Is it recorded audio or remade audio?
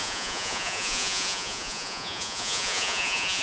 remade